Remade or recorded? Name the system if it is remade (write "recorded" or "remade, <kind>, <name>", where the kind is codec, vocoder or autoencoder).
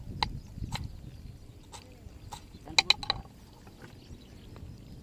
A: recorded